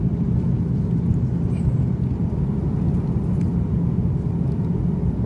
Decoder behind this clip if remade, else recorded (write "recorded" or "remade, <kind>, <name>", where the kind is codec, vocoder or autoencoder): recorded